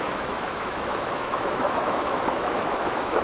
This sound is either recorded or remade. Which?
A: remade